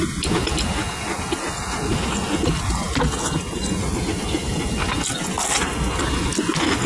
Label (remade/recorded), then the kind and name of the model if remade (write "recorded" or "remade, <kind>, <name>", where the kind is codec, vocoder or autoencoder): recorded